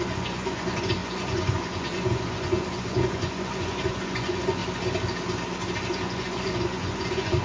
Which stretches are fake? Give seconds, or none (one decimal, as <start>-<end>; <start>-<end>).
0.0-4.6; 5.9-7.4